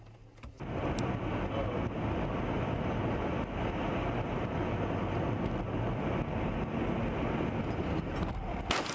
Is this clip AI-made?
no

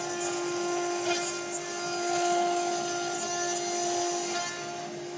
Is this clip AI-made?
no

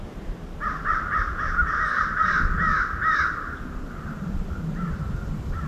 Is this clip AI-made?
no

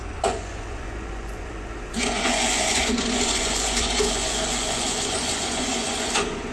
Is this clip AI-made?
yes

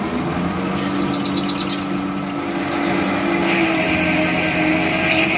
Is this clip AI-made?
no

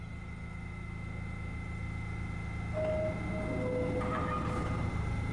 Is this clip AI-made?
no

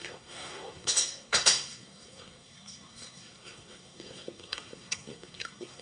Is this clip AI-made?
yes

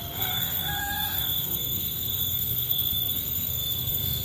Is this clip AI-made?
yes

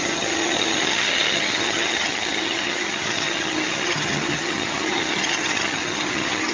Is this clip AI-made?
yes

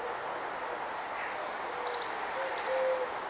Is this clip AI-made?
no